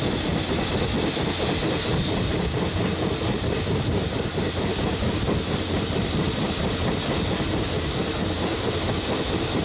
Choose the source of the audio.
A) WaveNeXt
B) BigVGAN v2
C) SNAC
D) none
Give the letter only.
D